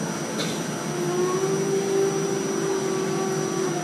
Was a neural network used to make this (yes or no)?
no